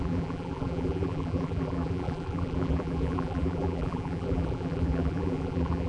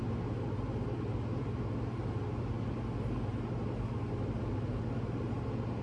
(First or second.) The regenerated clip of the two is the first